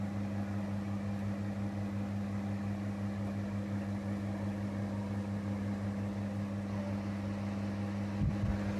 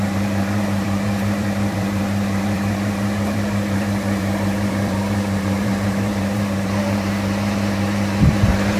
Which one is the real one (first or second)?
first